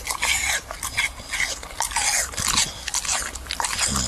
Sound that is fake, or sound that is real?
real